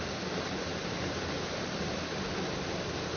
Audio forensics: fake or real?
real